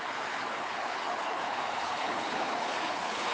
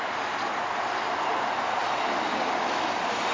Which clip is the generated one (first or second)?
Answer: first